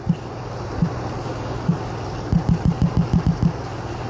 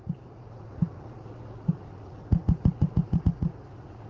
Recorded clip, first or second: first